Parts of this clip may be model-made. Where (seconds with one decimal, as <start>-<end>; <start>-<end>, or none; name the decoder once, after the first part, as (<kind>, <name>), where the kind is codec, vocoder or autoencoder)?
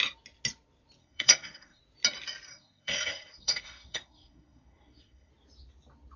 1.0-1.8 (codec, SNAC); 2.5-5.3